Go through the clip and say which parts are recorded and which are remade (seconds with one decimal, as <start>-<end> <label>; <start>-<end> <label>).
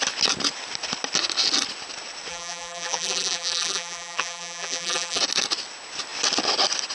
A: 0.0-2.3 recorded; 2.3-5.2 remade; 5.2-6.9 recorded